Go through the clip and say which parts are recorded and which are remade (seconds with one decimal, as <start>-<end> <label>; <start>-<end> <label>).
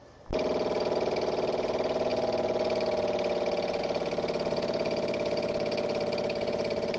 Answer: 0.0-7.0 recorded